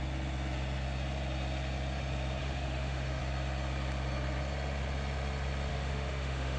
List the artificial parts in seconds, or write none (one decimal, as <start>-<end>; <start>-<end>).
2.4-3.2; 5.7-6.6